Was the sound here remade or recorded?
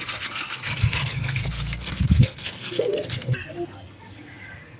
remade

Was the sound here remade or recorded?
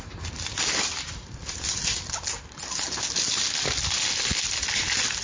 recorded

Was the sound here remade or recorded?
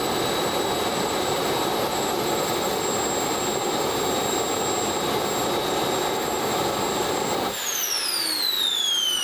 recorded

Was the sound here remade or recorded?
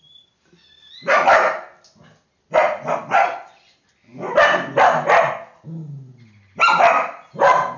recorded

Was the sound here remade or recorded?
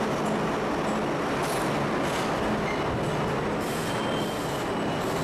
recorded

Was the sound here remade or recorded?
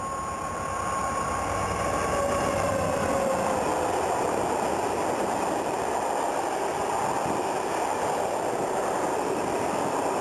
recorded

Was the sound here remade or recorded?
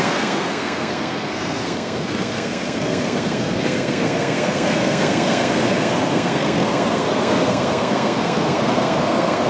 remade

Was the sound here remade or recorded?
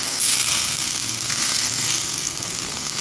remade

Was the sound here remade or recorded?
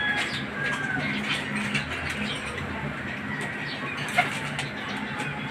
recorded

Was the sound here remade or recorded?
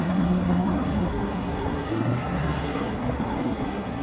remade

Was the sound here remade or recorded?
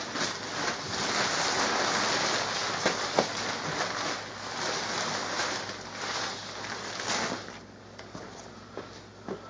recorded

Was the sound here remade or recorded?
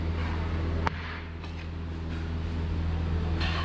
recorded